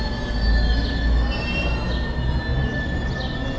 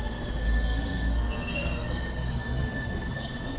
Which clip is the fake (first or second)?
second